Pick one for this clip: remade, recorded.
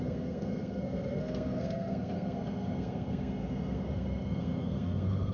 remade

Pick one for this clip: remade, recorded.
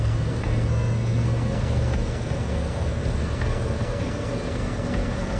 remade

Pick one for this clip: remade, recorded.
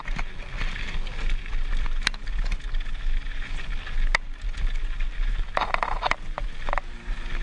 recorded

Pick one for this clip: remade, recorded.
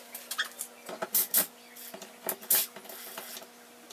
recorded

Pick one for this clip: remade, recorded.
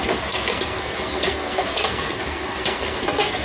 remade